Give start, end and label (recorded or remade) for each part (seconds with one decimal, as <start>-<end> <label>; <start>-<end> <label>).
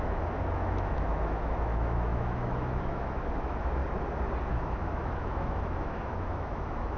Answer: 0.0-3.8 remade; 3.8-4.5 recorded; 4.5-7.0 remade